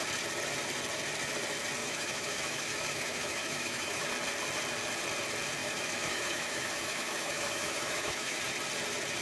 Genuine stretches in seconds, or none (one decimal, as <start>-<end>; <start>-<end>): 0.0-1.8; 4.1-5.6; 8.4-9.2